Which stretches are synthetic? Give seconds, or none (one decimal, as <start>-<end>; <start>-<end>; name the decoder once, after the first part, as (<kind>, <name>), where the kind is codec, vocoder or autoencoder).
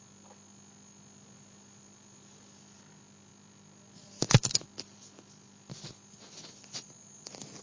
none